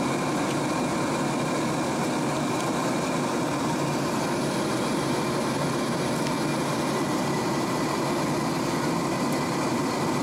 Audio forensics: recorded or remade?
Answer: recorded